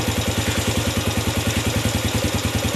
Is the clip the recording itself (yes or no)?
yes